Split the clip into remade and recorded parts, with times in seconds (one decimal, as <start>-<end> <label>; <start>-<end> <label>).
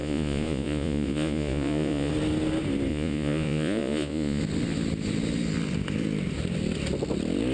0.0-2.1 remade; 2.1-2.9 recorded; 2.9-4.4 remade; 4.4-7.5 recorded